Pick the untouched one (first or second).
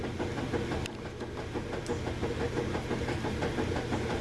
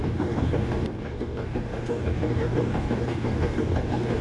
first